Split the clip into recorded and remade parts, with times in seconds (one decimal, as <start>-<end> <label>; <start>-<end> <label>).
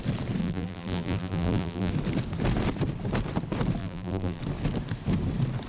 0.0-0.4 recorded; 0.4-1.9 remade; 1.9-3.8 recorded; 3.8-4.4 remade; 4.4-5.7 recorded